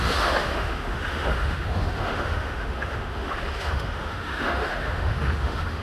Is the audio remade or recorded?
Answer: remade